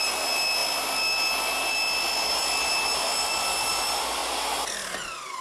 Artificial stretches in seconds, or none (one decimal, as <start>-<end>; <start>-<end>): none